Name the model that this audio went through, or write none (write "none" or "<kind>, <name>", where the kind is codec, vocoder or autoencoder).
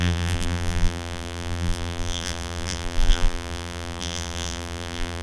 vocoder, BigVGAN v2